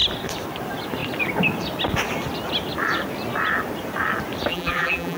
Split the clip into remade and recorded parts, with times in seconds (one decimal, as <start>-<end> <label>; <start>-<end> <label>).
0.0-4.5 recorded; 4.5-5.2 remade